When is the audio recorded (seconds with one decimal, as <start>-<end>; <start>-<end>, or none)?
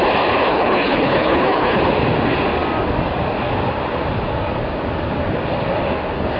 0.0-0.5; 1.8-6.4